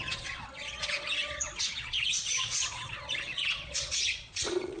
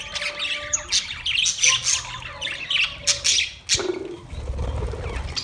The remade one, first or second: first